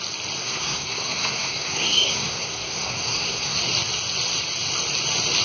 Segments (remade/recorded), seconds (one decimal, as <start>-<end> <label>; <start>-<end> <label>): 0.0-0.4 recorded; 0.4-3.6 remade; 3.6-5.4 recorded